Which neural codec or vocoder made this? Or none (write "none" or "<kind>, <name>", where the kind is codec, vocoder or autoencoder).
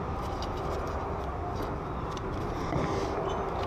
none